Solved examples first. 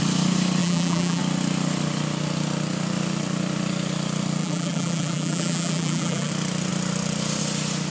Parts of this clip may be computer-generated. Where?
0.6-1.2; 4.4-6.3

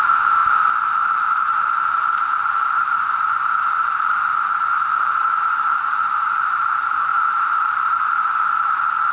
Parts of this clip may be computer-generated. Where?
none

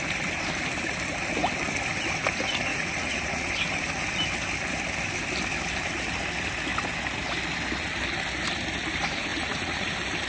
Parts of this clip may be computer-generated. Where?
2.7-3.5; 9.3-9.9

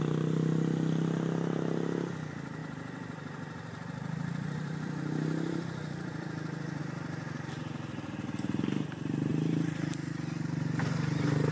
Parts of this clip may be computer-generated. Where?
2.6-6.8; 9.3-10.1

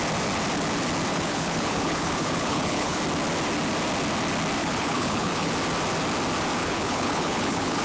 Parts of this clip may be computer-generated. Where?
1.1-3.0; 4.6-5.5; 6.6-7.8